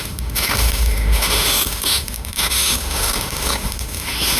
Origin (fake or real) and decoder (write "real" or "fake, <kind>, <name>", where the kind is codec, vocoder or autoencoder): fake, autoencoder, DAC-VAE